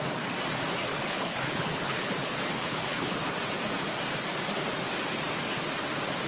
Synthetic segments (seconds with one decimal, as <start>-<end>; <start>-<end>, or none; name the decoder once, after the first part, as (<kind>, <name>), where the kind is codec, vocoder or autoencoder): 0.9-3.3 (codec, HILCodec)